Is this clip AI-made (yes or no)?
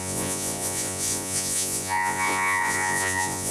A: yes